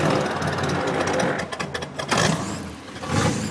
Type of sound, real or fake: real